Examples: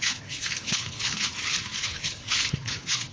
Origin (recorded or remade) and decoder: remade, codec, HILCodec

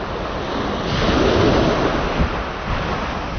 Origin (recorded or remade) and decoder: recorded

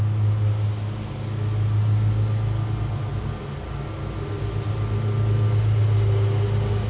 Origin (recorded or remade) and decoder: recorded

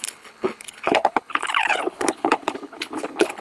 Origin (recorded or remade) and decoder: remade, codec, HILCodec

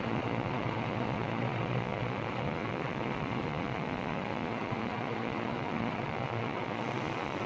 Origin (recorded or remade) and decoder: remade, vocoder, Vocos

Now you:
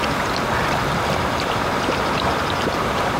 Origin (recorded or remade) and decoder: recorded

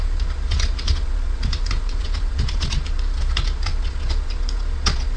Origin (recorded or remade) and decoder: remade, vocoder, Vocos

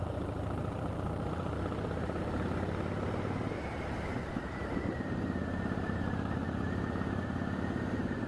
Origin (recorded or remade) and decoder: remade, vocoder, BigVGAN v2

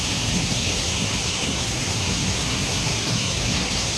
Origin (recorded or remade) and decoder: remade, codec, SNAC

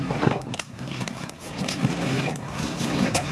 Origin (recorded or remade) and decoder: remade, codec, SNAC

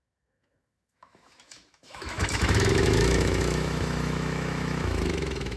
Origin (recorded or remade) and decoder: remade, autoencoder, DAC-VAE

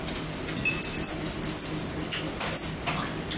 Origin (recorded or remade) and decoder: recorded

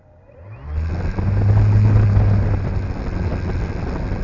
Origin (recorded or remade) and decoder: recorded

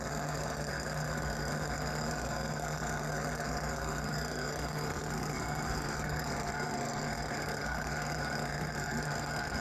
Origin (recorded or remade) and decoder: remade, codec, SNAC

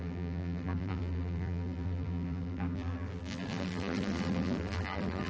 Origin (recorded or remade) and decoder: remade, vocoder, BigVGAN v2